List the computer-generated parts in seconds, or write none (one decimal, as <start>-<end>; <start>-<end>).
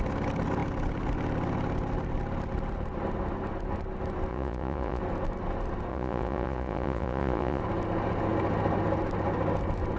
4.3-5.0; 5.9-7.6